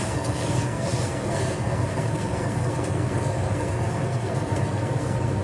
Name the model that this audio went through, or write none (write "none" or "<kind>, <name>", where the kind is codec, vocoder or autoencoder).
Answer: codec, SNAC